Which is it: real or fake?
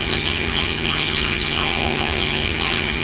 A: fake